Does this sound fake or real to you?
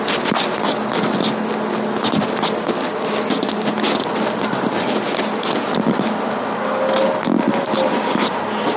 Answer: real